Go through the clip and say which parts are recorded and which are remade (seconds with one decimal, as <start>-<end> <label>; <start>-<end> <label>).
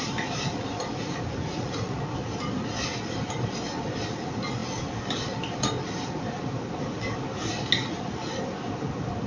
0.0-1.4 recorded; 1.4-2.0 remade; 2.0-9.3 recorded